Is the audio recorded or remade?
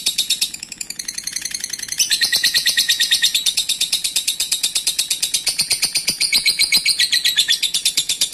remade